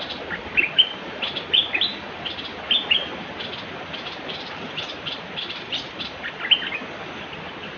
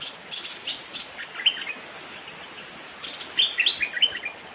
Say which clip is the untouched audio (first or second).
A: second